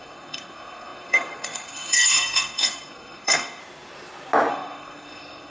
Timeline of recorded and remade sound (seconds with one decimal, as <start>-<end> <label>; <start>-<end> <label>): 0.0-3.6 remade; 3.6-4.5 recorded; 4.5-5.5 remade